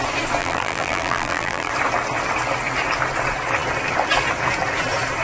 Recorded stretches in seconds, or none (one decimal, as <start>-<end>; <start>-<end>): 0.0-0.4; 1.7-5.2